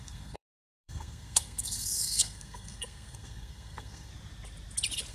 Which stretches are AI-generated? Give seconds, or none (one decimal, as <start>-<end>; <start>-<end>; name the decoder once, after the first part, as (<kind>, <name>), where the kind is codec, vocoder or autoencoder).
0.0-4.1 (codec, SNAC)